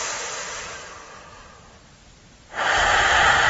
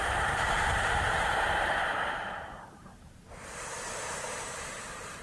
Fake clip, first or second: second